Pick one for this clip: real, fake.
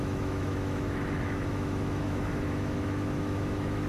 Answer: fake